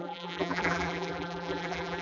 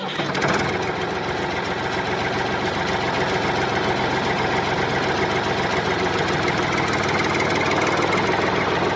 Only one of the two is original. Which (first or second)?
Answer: second